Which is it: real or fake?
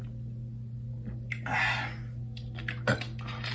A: real